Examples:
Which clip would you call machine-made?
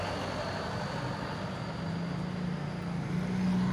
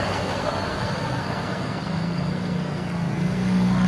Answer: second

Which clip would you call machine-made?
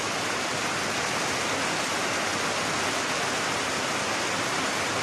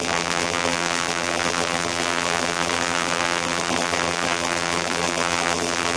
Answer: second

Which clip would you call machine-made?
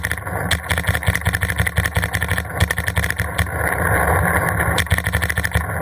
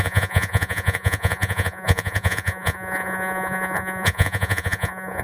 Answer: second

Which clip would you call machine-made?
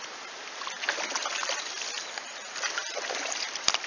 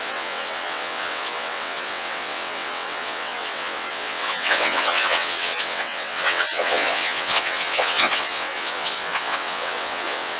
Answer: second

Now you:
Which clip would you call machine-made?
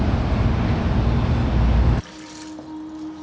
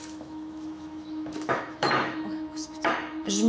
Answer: second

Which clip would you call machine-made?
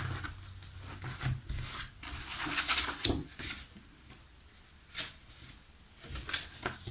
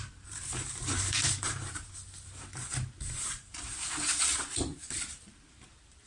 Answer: second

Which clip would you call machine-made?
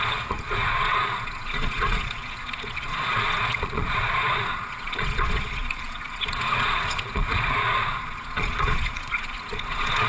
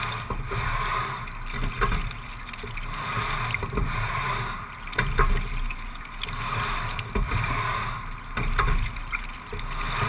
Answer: first